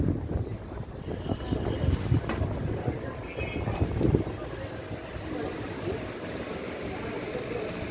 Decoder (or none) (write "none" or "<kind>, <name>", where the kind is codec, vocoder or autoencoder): none